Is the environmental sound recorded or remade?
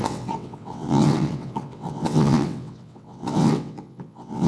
remade